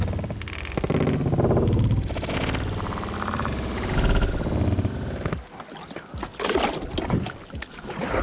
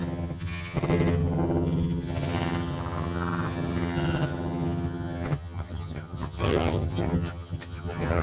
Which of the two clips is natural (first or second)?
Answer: first